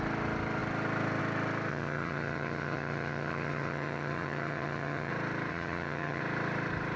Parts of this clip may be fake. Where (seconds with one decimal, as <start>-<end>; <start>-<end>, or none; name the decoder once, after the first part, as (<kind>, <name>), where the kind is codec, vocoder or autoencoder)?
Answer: 1.7-5.1 (vocoder, HiFi-GAN); 5.5-6.2